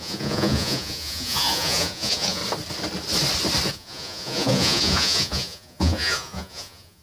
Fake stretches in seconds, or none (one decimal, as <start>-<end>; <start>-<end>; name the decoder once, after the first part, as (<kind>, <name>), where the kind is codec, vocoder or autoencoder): 0.0-2.4 (vocoder, Vocos); 3.7-7.0